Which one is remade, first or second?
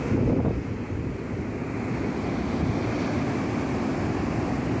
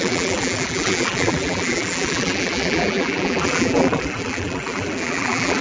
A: second